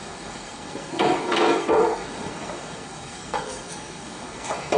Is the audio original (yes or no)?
no